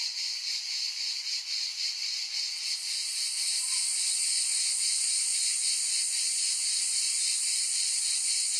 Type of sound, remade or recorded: remade